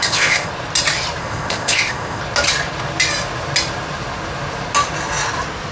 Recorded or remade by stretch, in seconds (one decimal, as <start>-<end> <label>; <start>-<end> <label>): 0.0-0.5 remade; 0.5-1.2 recorded; 1.2-2.2 remade; 2.2-5.7 recorded